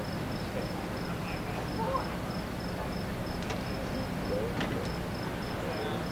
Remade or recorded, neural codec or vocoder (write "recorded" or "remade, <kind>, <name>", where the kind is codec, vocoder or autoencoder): recorded